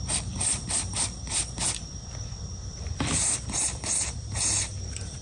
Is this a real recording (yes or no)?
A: no